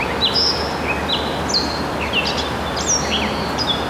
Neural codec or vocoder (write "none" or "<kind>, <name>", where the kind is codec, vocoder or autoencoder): none